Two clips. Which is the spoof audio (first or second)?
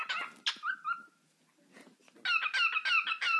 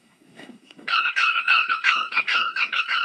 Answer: second